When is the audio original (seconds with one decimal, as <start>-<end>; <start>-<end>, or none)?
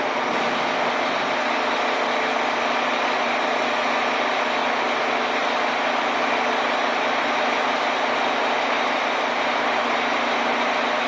0.0-11.1